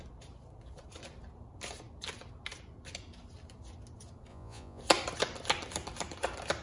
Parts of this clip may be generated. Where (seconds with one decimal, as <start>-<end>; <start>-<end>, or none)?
4.3-4.8